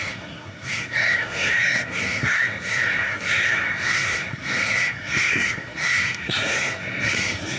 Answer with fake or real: fake